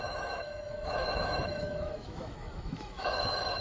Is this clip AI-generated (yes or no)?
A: yes